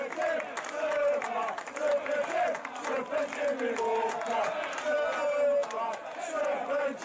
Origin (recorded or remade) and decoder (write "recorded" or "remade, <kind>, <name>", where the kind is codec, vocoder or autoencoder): recorded